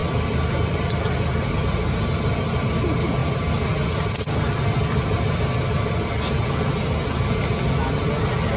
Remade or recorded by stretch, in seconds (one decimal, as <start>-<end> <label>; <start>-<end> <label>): 0.0-8.6 recorded